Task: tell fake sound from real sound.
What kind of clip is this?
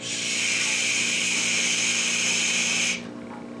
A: real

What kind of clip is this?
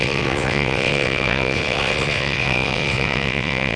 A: fake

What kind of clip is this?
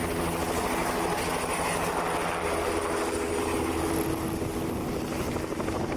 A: real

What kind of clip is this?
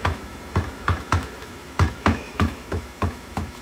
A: fake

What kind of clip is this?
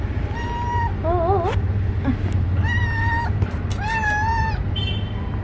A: real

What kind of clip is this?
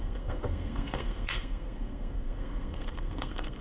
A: fake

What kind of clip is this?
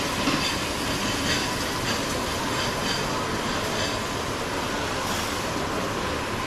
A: real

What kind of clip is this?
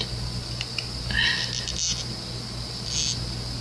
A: real